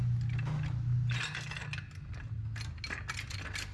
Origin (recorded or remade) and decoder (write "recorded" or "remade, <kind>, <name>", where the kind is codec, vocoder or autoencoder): recorded